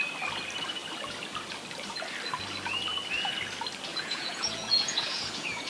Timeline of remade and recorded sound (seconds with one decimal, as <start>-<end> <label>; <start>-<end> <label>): 0.0-3.9 recorded; 3.9-5.7 remade